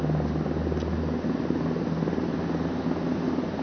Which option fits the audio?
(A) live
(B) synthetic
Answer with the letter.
A